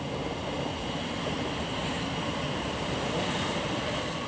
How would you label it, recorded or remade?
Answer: remade